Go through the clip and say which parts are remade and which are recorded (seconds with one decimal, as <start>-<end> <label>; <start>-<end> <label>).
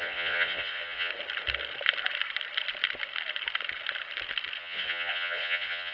0.0-1.1 remade; 1.1-4.6 recorded; 4.6-5.9 remade